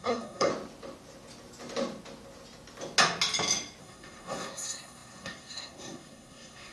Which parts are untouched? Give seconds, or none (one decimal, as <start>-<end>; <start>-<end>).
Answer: 0.5-3.8